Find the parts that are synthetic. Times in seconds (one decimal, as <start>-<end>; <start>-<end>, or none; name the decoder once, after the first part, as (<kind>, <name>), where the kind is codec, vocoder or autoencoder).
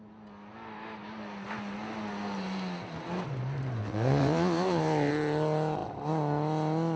3.8-5.1 (vocoder, WaveNeXt)